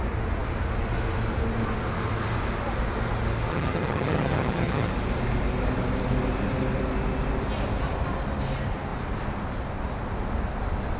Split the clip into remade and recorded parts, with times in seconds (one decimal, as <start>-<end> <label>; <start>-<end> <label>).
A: 0.0-3.5 recorded; 3.5-4.9 remade; 4.9-11.0 recorded